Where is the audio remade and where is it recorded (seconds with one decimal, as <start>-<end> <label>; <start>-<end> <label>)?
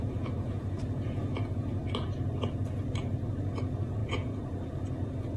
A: 0.0-1.8 remade; 1.8-3.3 recorded; 3.3-5.4 remade